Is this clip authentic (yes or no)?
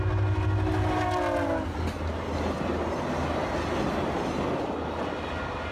yes